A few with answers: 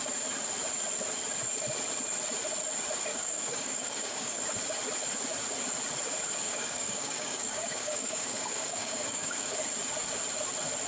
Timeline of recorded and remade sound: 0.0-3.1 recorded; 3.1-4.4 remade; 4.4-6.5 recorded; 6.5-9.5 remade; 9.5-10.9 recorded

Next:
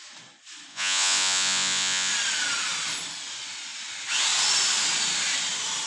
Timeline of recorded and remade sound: 0.0-0.7 recorded; 0.7-2.1 remade; 2.1-5.9 recorded

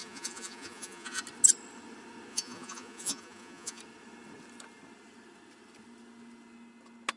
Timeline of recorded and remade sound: 0.0-1.2 remade; 1.2-2.3 recorded; 2.3-3.8 remade; 3.8-7.2 recorded

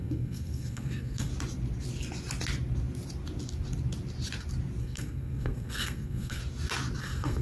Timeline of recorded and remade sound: 0.0-1.3 remade; 1.3-4.8 recorded; 4.8-6.4 remade; 6.4-7.0 recorded; 7.0-7.4 remade

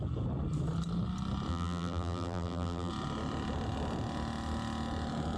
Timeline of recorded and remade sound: 0.0-1.5 recorded; 1.5-2.9 remade; 2.9-5.4 recorded